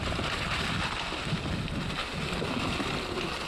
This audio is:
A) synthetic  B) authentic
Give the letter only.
B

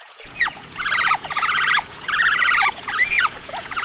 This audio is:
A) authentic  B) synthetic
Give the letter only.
B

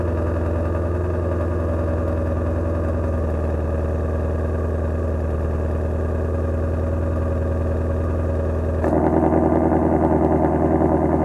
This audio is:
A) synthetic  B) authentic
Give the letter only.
B